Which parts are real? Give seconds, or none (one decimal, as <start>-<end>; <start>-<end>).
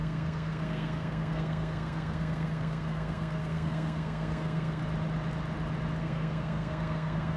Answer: 4.8-6.0